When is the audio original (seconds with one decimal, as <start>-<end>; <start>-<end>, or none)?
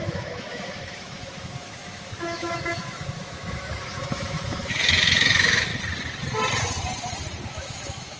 5.7-7.5